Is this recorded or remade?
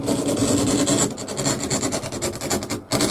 recorded